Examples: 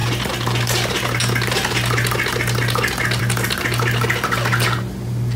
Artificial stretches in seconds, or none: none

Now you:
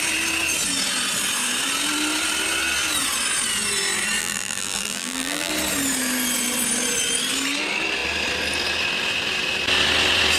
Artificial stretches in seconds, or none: 4.2-5.5 (vocoder, BigVGAN v2)

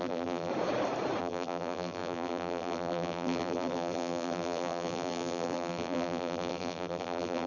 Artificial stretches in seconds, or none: 0.0-0.5 (vocoder, BigVGAN v2); 1.2-7.5

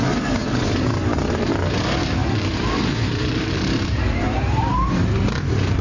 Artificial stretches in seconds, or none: 2.2-5.8 (vocoder, BigVGAN v2)

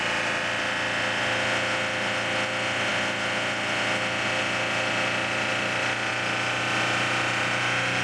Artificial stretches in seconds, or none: none

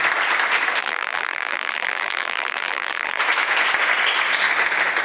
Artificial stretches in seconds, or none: 0.8-3.2 (vocoder, BigVGAN v2)

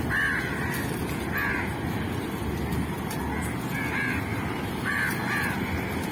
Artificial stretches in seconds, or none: 4.3-5.0 (vocoder, BigVGAN v2)